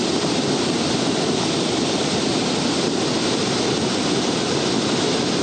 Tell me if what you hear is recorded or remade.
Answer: recorded